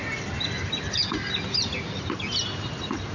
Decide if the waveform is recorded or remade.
recorded